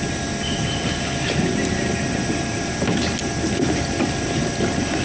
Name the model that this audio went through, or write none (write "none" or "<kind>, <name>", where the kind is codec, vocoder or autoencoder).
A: none